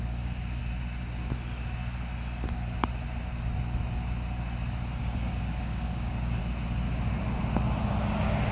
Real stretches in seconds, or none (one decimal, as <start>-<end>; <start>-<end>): 0.6-5.0; 6.4-8.5